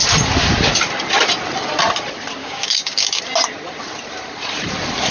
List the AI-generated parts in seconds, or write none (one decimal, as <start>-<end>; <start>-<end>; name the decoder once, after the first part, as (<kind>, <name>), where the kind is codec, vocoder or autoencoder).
2.4-3.2 (codec, DAC)